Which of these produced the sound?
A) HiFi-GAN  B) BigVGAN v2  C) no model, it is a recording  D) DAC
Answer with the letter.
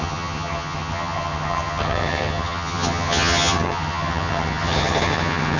A